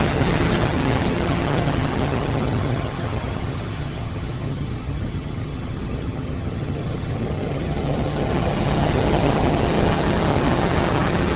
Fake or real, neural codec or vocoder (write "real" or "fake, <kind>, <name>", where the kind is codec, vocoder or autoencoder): fake, vocoder, HiFi-GAN